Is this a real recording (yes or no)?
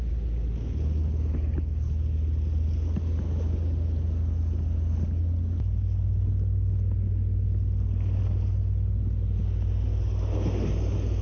yes